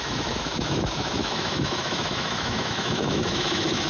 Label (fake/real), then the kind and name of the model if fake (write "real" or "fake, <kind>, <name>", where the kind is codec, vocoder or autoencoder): fake, autoencoder, DAC-VAE